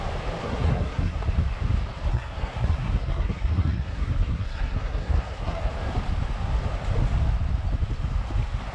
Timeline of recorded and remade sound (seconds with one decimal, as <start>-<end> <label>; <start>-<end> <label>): 0.0-0.4 recorded; 0.4-1.2 remade; 1.2-2.1 recorded; 2.1-5.7 remade; 5.7-8.7 recorded